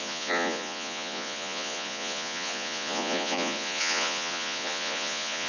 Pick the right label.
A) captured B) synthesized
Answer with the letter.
B